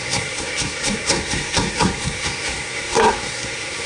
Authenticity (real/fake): fake